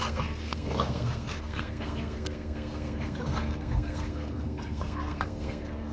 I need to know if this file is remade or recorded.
remade